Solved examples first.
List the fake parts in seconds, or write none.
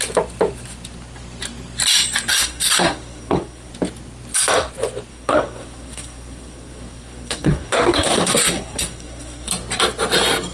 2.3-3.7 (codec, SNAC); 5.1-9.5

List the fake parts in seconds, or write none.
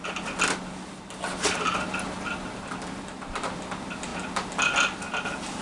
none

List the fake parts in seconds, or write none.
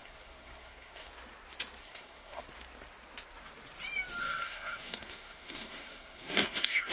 0.0-1.1 (codec, SNAC); 1.8-2.4; 4.2-6.9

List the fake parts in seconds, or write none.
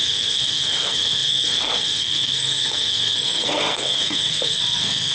0.0-5.1 (codec, SNAC)